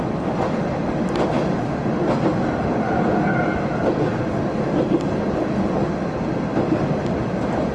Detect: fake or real real